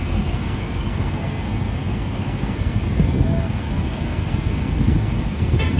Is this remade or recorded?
remade